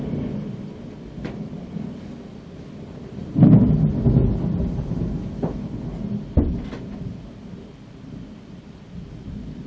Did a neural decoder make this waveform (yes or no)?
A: no